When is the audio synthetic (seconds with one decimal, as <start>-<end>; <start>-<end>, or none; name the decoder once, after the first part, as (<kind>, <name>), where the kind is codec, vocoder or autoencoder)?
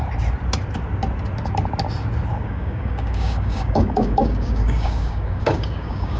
2.3-6.2 (codec, DAC)